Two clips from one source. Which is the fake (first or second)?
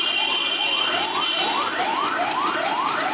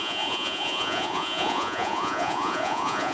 second